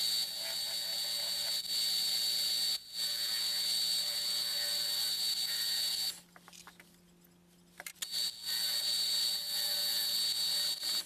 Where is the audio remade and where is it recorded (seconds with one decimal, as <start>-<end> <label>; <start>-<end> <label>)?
0.0-11.1 recorded